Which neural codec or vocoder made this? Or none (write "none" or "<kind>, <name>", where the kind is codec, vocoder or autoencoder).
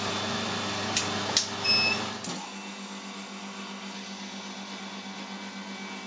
none